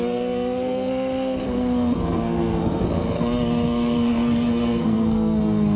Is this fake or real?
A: fake